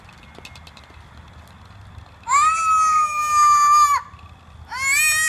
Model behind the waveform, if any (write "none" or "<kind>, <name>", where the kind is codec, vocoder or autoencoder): none